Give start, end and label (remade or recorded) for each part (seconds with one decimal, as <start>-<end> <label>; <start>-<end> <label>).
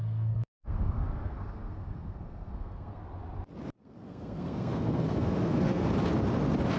0.0-3.0 remade; 3.0-3.8 recorded; 3.8-5.8 remade; 5.8-6.8 recorded